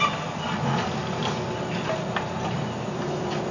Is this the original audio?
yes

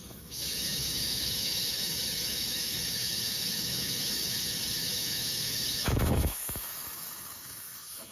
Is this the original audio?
no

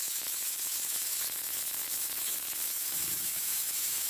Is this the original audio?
no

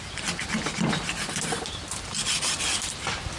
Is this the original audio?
yes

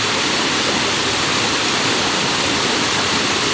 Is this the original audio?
yes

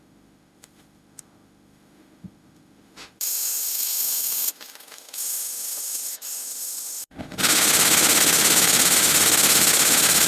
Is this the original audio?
no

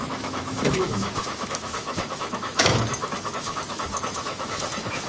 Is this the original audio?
no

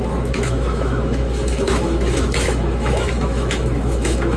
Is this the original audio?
no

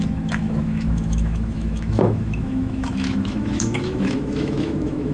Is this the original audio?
no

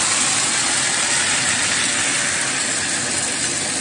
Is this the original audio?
yes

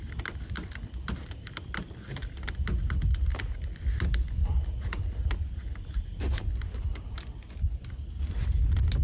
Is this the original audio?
yes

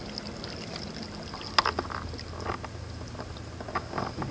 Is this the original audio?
yes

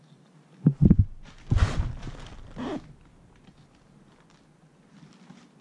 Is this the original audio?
yes